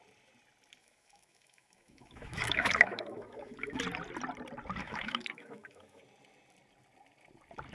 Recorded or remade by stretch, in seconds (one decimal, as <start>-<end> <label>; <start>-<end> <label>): 0.0-0.8 recorded; 0.8-3.8 remade; 3.8-4.8 recorded; 4.8-6.0 remade; 6.0-7.7 recorded